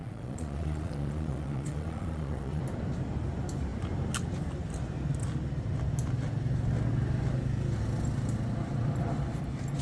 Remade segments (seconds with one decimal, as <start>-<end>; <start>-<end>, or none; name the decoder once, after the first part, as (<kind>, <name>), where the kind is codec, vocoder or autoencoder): 0.0-2.6 (vocoder, Vocos)